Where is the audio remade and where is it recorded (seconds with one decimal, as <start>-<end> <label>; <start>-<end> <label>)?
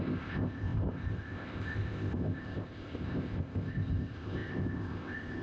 0.0-5.4 remade